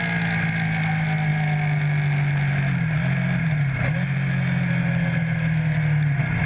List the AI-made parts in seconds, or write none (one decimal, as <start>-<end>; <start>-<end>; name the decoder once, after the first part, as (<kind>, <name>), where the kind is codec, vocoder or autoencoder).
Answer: none